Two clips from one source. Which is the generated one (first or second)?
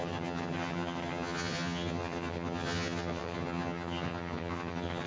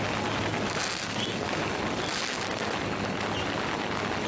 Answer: first